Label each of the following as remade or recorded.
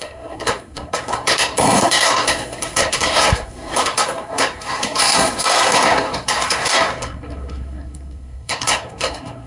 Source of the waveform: remade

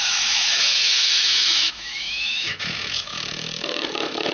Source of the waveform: remade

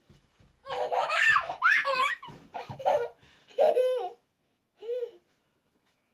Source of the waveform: remade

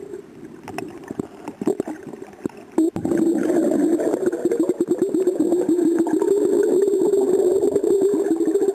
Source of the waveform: recorded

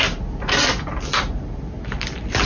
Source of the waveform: recorded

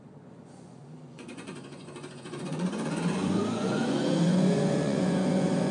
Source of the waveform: remade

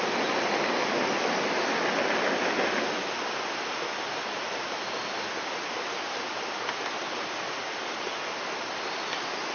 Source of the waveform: recorded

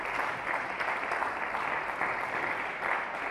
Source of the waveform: recorded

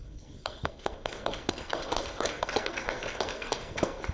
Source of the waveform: remade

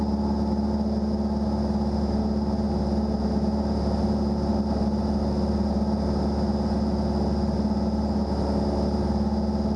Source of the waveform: recorded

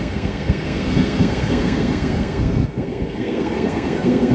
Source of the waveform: remade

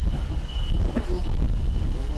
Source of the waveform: remade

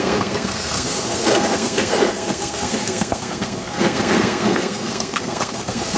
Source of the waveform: remade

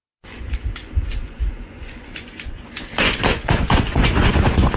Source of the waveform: remade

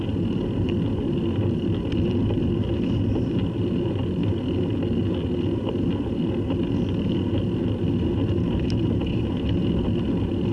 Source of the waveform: recorded